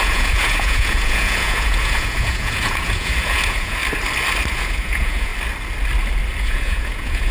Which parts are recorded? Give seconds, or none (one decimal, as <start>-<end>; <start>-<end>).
3.8-4.5; 5.3-6.4